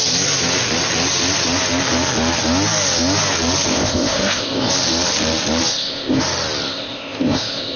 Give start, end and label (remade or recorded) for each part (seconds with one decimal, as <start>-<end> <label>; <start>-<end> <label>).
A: 0.0-3.7 recorded; 3.7-4.7 remade; 4.7-5.7 recorded; 5.7-6.2 remade; 6.2-6.7 recorded; 6.7-7.8 remade